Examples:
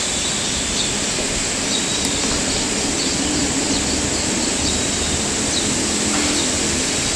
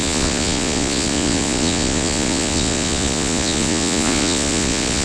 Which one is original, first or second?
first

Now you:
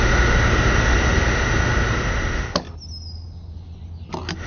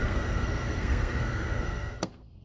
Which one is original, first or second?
first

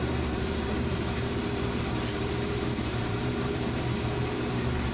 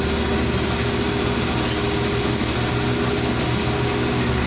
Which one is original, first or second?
second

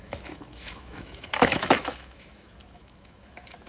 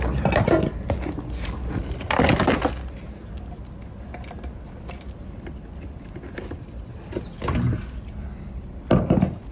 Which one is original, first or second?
second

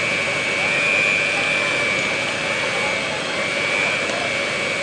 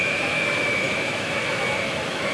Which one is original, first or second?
first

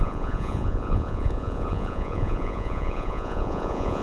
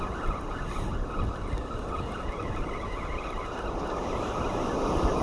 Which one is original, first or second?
second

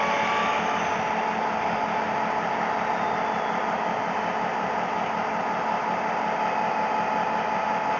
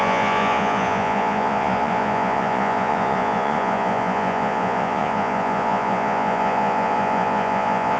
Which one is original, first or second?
first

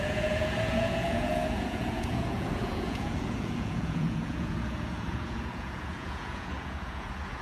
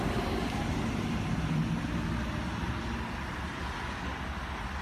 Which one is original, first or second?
second